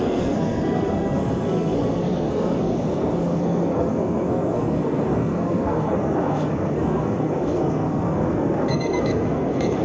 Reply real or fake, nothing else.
fake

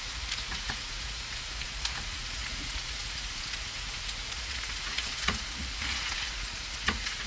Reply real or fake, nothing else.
fake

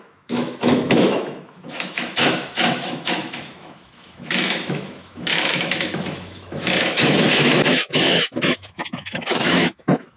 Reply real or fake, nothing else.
fake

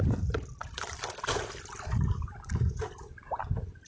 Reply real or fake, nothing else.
real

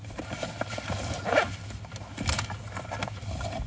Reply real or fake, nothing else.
real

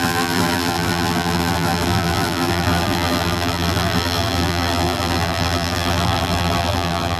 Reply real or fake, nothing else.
fake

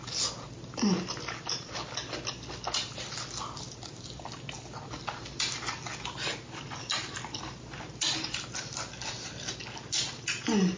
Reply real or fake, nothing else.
real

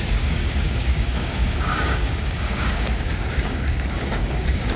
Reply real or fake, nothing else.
fake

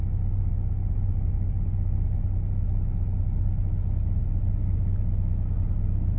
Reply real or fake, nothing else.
real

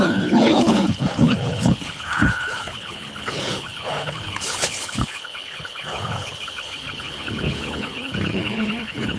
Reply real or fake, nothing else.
fake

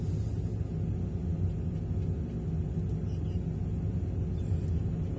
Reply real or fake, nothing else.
real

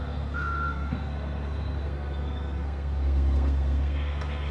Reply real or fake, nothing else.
fake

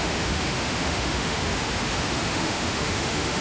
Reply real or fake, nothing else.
fake